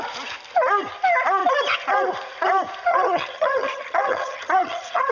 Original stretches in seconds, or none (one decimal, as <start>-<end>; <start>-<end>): 0.0-2.9